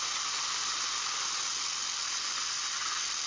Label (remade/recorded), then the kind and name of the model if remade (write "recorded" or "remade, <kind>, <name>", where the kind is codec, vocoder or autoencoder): recorded